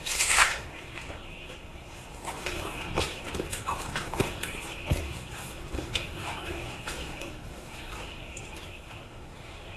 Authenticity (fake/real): fake